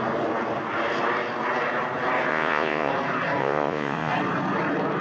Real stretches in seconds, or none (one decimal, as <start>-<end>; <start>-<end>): 0.0-2.3; 2.9-3.4; 4.1-5.0